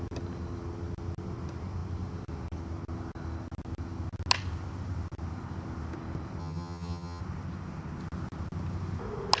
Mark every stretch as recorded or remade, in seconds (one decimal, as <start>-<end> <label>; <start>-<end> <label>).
0.0-6.4 recorded; 6.4-7.2 remade; 7.2-9.4 recorded